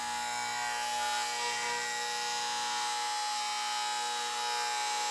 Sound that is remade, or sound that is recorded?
remade